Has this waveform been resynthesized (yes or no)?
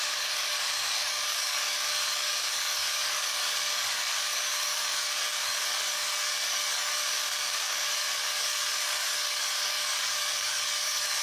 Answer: yes